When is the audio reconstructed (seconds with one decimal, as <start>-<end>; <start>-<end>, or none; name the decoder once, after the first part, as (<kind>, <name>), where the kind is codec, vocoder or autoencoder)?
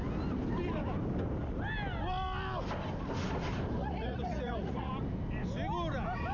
3.8-4.9 (vocoder, Vocos)